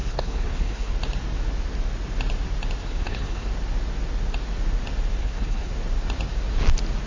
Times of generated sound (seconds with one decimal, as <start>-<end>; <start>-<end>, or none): 0.0-0.9; 2.8-3.5; 5.2-5.7